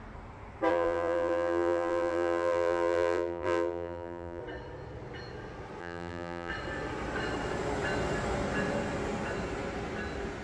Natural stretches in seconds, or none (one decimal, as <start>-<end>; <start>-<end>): 0.0-0.7; 4.4-5.8; 6.5-10.4